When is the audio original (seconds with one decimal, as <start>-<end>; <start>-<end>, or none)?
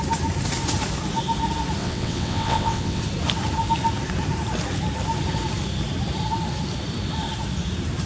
0.0-1.8; 3.0-8.1